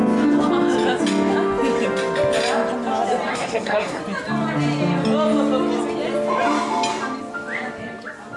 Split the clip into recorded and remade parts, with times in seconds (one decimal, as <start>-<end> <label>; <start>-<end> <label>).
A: 0.0-3.3 recorded; 3.3-4.0 remade; 4.0-8.4 recorded